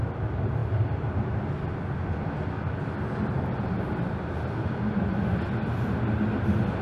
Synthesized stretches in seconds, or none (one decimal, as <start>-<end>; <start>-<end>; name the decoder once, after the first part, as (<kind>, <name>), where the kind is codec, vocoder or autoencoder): none